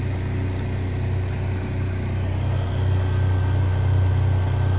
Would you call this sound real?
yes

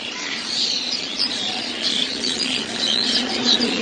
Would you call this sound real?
no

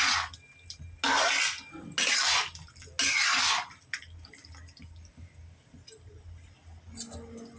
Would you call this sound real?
yes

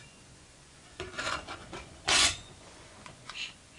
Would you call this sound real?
no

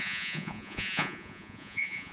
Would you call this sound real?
no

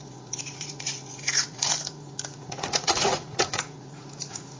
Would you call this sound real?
no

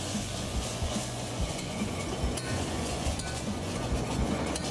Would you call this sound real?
no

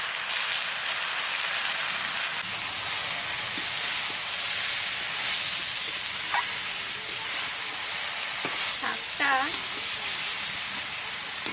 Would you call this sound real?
yes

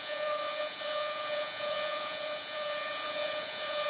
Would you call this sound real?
no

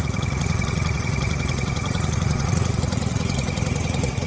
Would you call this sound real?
no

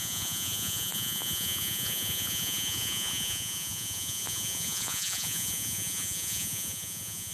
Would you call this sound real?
no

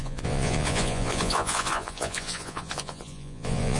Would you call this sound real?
no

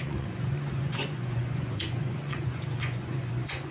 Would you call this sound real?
no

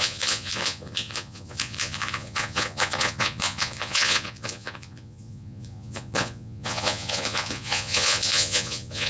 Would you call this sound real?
no